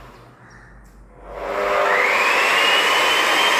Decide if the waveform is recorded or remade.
recorded